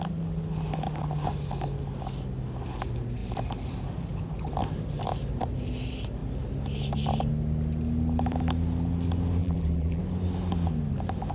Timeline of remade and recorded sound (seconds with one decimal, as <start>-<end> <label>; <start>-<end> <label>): 0.0-9.4 recorded; 9.4-10.0 remade; 10.0-11.3 recorded